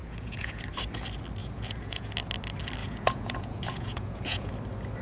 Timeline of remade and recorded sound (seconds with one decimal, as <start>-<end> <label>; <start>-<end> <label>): 0.0-0.6 remade; 0.6-1.4 recorded; 1.4-2.1 remade; 2.1-2.8 recorded; 2.8-4.5 remade; 4.5-5.0 recorded